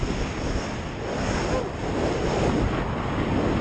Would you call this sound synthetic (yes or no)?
no